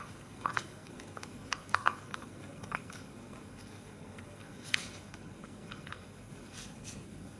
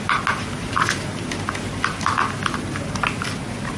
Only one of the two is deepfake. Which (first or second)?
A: first